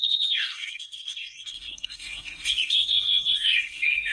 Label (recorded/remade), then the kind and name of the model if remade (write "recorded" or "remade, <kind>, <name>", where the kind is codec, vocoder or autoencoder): remade, codec, SNAC